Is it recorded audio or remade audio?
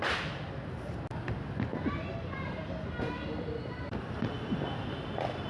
recorded